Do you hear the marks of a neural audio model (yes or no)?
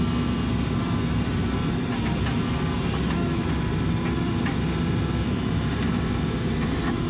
no